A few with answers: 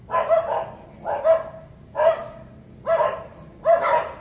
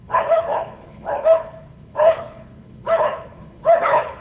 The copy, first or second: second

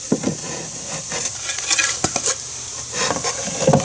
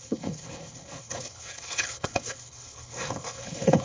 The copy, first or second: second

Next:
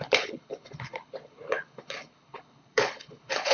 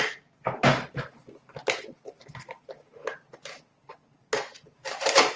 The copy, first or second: first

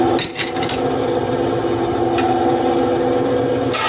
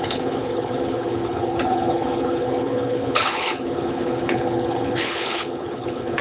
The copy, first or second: second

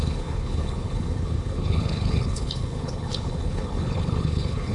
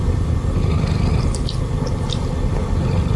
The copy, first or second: first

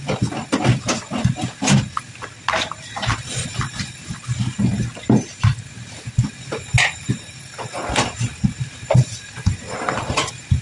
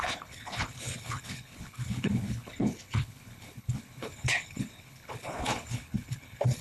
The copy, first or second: second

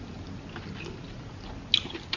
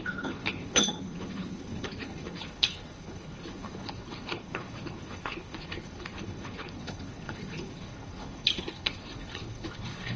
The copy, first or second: second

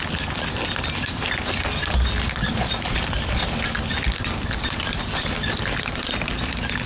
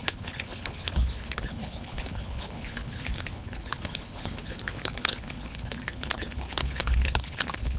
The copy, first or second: second